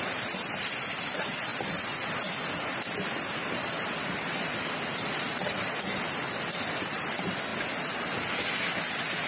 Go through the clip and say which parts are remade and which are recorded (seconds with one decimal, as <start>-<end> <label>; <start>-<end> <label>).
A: 0.0-7.5 remade; 7.5-8.8 recorded; 8.8-9.3 remade

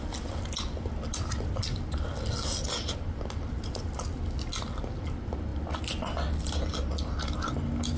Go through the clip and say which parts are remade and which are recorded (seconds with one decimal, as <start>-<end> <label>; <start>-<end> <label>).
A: 0.0-8.0 recorded

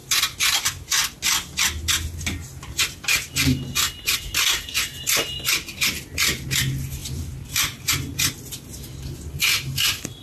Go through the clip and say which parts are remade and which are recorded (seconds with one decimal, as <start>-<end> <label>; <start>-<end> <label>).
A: 0.0-10.2 recorded

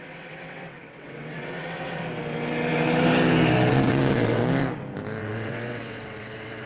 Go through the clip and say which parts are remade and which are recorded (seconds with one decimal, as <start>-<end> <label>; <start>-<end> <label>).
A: 0.0-2.0 remade; 2.0-3.7 recorded; 3.7-4.4 remade; 4.4-5.2 recorded; 5.2-6.7 remade

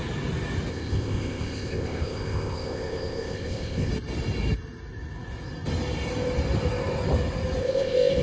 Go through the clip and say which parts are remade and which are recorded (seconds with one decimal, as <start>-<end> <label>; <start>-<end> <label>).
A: 0.0-0.7 recorded; 0.7-3.9 remade; 3.9-7.6 recorded; 7.6-8.2 remade

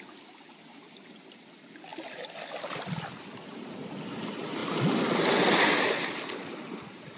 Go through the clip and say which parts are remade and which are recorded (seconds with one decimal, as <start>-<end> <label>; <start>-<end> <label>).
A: 0.0-7.2 recorded

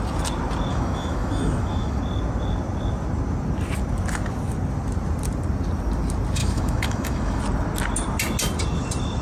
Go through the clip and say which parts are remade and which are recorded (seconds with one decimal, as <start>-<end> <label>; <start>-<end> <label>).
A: 0.0-0.7 recorded; 0.7-2.0 remade; 2.0-6.4 recorded; 6.4-7.4 remade; 7.4-9.2 recorded

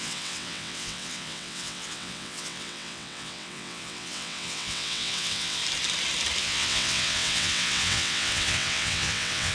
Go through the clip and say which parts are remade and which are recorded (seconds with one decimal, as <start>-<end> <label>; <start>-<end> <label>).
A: 0.0-5.6 remade; 5.6-6.4 recorded; 6.4-9.5 remade